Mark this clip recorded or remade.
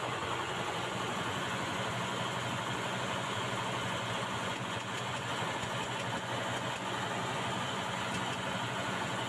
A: remade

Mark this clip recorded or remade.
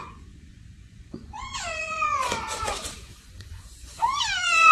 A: remade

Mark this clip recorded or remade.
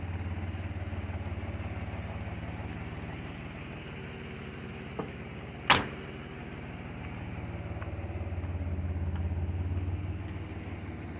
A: recorded